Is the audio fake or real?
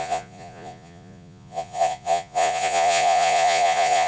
fake